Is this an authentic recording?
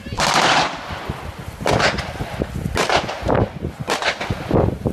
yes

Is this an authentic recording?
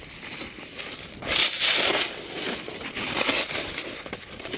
yes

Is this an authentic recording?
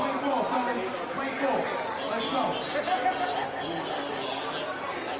yes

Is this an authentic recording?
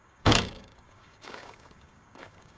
no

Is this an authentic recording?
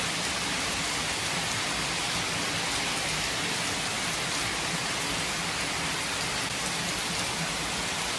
yes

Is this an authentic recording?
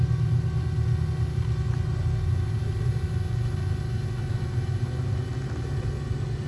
yes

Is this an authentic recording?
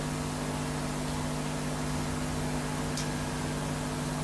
yes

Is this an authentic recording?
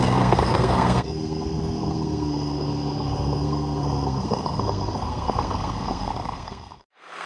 no